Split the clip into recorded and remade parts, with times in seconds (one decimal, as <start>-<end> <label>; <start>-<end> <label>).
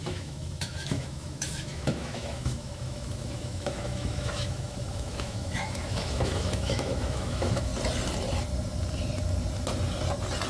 0.0-7.7 remade; 7.7-10.5 recorded